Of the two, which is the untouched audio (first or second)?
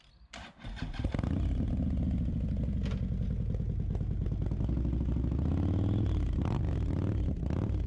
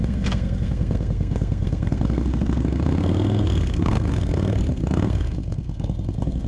first